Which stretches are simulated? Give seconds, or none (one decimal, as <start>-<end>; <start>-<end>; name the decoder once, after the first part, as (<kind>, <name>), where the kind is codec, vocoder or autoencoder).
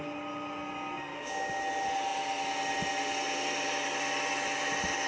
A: 1.1-1.6 (codec, DAC)